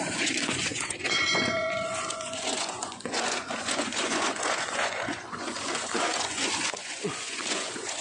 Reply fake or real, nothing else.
fake